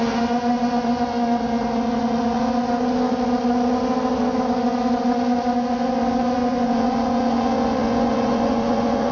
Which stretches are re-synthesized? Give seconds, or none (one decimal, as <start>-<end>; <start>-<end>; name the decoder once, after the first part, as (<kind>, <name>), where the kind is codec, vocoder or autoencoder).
6.4-9.1 (vocoder, Vocos)